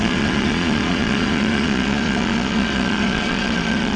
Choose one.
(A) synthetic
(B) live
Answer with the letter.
A